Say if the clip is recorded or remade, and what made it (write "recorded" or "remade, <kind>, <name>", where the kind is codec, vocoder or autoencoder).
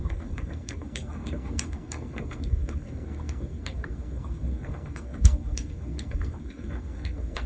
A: remade, codec, SNAC